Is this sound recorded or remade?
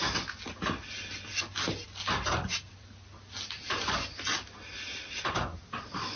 recorded